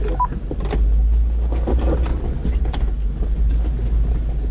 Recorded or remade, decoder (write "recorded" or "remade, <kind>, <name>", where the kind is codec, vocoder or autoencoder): recorded